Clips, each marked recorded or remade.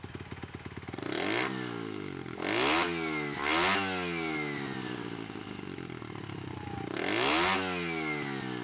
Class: recorded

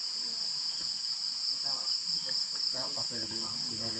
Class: recorded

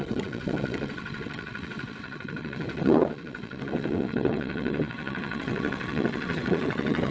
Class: remade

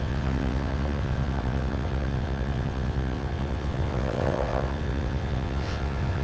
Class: remade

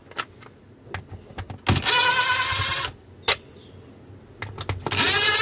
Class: recorded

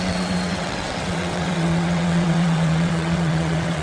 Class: remade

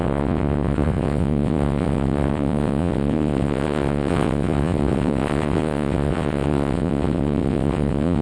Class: remade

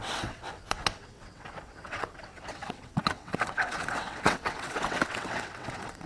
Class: remade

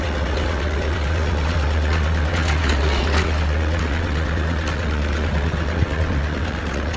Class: remade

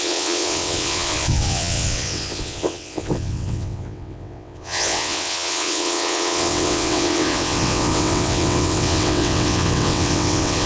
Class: remade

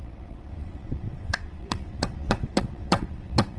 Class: remade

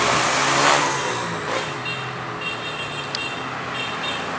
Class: recorded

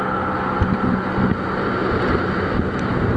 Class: recorded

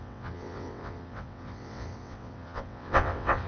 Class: remade